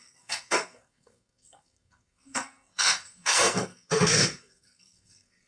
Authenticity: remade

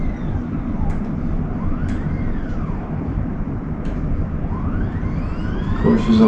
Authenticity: recorded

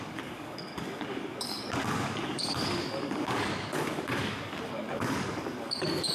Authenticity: remade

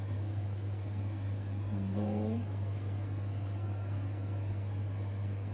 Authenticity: remade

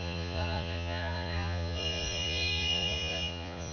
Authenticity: remade